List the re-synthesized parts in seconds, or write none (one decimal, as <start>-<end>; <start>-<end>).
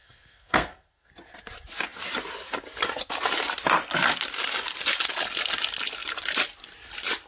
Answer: 0.0-1.1